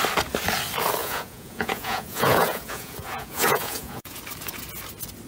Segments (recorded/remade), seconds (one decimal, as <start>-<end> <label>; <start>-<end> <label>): 0.0-1.0 recorded; 1.0-4.2 remade; 4.2-5.3 recorded